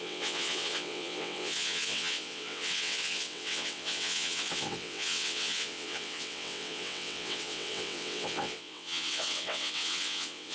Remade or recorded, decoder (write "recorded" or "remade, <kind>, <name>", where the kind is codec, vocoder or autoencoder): remade, vocoder, WaveNeXt